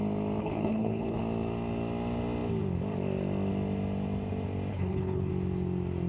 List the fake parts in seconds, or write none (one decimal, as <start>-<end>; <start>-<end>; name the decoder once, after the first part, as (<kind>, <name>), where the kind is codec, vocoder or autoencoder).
0.4-1.2 (codec, HILCodec); 4.7-5.3